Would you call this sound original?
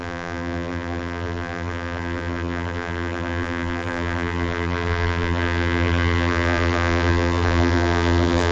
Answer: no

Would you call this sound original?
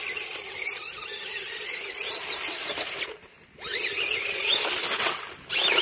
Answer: yes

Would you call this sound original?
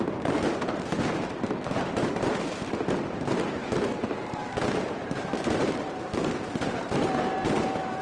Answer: no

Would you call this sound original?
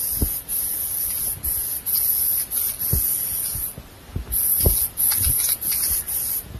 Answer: yes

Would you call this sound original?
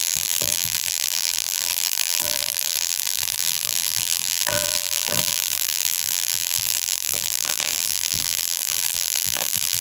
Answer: no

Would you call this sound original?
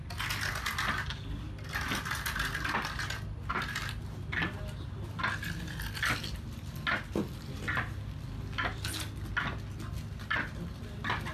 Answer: yes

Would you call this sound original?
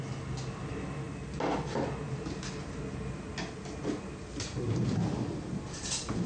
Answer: yes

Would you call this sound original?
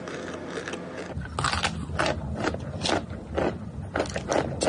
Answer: yes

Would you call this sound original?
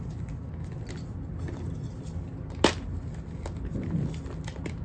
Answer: yes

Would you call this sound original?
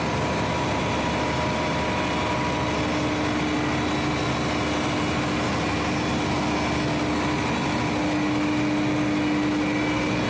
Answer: yes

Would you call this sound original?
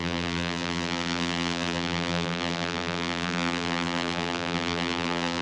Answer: no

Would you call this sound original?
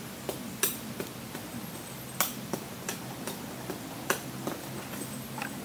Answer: no